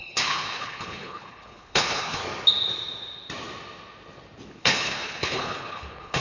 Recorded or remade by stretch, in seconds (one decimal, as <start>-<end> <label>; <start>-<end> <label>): 0.0-2.2 remade; 2.2-4.6 recorded; 4.6-6.2 remade